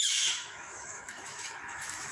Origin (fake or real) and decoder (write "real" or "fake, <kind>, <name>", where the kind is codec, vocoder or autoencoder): fake, autoencoder, DAC-VAE